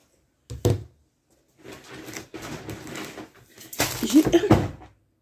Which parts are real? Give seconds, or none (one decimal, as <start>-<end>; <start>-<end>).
0.0-5.2